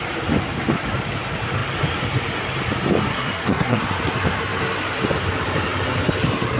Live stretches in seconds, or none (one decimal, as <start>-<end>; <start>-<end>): 0.0-3.1; 3.8-6.6